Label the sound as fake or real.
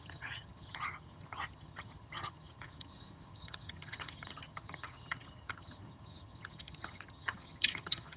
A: fake